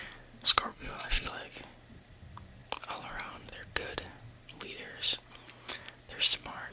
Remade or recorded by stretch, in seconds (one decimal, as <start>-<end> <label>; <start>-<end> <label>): 0.0-0.7 recorded; 0.7-1.3 remade; 1.3-6.7 recorded